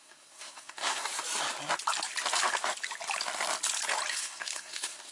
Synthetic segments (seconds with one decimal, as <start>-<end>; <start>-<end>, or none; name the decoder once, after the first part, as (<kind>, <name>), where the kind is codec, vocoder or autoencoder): 0.0-1.1 (codec, SNAC); 4.1-5.1